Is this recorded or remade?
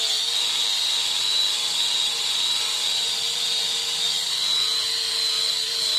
remade